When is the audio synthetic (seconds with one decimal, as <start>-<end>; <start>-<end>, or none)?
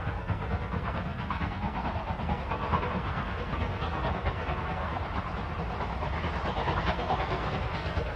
0.0-5.0; 6.8-8.2